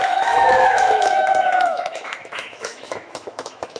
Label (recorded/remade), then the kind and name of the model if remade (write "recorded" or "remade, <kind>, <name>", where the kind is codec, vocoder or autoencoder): remade, autoencoder, DAC-VAE